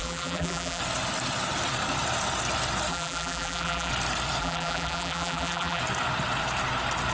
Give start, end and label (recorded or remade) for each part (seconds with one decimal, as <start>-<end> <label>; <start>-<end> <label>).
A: 0.0-0.8 remade; 0.8-2.9 recorded; 2.9-3.9 remade; 3.9-4.4 recorded; 4.4-5.8 remade; 5.8-7.1 recorded